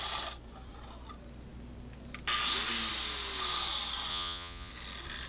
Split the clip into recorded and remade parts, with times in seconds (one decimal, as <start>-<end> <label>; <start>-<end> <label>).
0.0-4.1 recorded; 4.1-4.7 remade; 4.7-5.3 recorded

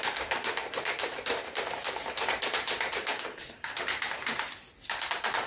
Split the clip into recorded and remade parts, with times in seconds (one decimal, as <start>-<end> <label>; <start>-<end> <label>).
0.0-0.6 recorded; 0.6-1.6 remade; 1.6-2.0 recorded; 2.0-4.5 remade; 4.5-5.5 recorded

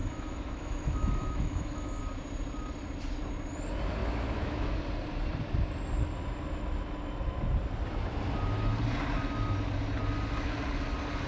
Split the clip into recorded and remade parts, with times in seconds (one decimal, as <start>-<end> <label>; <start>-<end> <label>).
0.0-2.0 remade; 2.0-4.0 recorded; 4.0-4.8 remade; 4.8-11.3 recorded

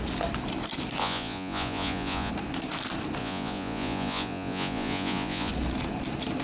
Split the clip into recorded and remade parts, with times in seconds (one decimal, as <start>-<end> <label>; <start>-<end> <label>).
0.0-1.0 recorded; 1.0-2.3 remade; 2.3-3.2 recorded; 3.2-5.5 remade; 5.5-6.4 recorded

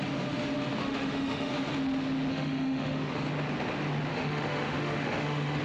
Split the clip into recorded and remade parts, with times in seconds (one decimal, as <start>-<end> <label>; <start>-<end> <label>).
0.0-0.8 recorded; 0.8-1.5 remade; 1.5-2.3 recorded; 2.3-3.1 remade; 3.1-4.1 recorded; 4.1-5.6 remade

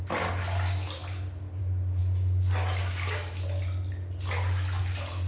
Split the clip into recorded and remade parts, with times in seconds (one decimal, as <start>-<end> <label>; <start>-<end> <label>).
0.0-5.3 recorded

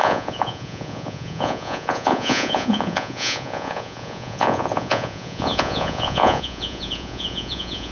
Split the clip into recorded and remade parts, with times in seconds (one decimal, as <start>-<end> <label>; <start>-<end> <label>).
0.0-7.9 remade

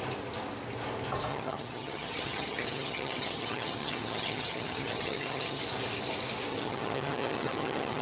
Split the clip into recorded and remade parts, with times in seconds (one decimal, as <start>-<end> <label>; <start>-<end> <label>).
0.0-1.3 recorded; 1.3-5.6 remade; 5.6-6.5 recorded; 6.5-8.0 remade